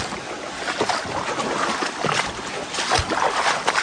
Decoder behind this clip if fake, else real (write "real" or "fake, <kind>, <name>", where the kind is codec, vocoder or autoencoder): real